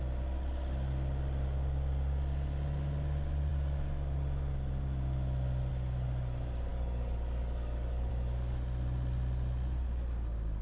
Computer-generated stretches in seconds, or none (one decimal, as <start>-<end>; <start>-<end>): 6.7-8.1